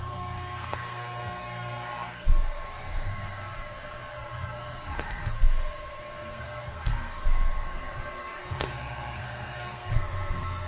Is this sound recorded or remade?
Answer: remade